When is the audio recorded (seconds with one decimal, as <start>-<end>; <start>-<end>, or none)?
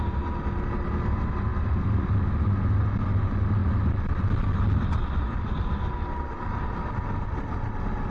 0.0-8.1